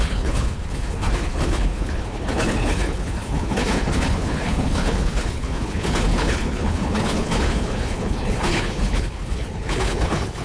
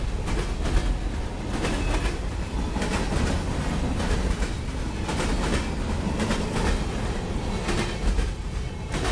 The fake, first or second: first